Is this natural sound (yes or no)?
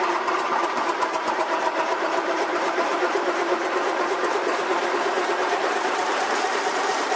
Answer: no